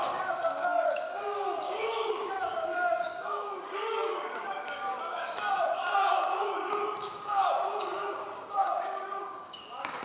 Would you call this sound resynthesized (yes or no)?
yes